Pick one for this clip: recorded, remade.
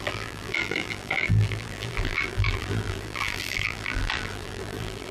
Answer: remade